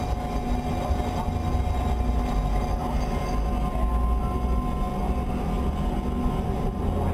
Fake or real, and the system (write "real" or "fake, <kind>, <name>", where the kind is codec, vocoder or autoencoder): real